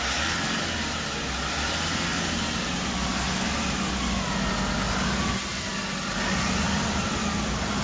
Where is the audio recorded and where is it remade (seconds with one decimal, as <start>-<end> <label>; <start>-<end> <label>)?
0.0-7.8 recorded